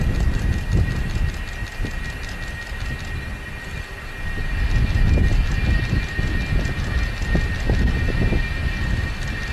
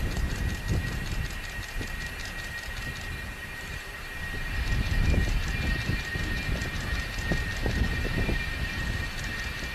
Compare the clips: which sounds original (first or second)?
first